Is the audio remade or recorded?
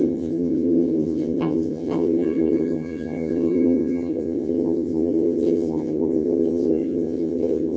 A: remade